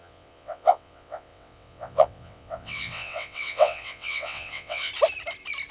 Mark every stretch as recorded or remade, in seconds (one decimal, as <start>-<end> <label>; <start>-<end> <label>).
0.0-4.9 remade; 4.9-5.7 recorded